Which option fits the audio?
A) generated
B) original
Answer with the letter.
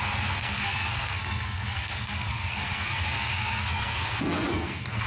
A